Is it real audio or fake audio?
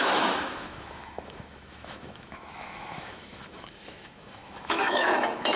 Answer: fake